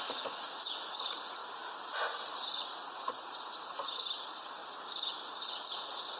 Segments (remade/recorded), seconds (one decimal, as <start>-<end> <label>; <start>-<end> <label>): 0.0-1.4 remade; 1.4-2.2 recorded; 2.2-4.6 remade; 4.6-5.7 recorded; 5.7-6.2 remade